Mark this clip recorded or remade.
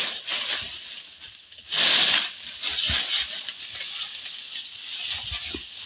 recorded